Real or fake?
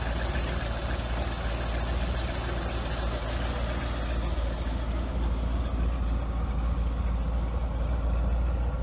real